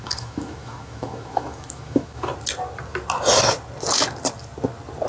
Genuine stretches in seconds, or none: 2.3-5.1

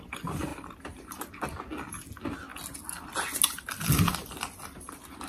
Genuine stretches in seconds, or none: 0.0-0.5; 1.2-5.3

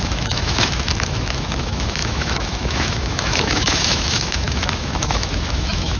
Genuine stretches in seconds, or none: none

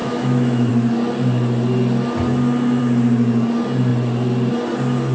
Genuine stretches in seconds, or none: 0.7-5.1

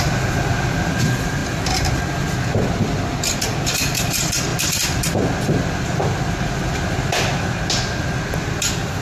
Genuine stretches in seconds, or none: 0.0-9.0

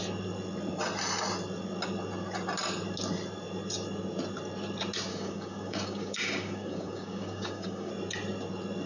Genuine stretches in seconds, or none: 0.0-5.1; 7.9-8.9

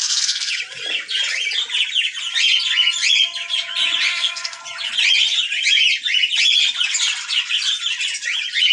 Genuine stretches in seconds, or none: 0.5-4.1; 4.6-8.7